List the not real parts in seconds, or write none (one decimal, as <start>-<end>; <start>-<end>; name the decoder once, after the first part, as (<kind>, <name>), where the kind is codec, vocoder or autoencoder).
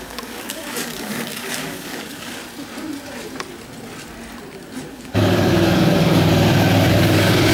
0.0-2.4 (codec, DAC); 4.9-6.3; 6.9-7.5